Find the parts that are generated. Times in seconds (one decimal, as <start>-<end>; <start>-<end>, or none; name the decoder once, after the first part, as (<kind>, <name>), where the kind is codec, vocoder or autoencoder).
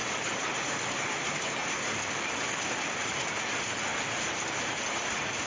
0.0-0.5 (vocoder, BigVGAN v2); 1.6-3.2